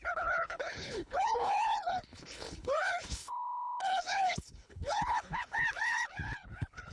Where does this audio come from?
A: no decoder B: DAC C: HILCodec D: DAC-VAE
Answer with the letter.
C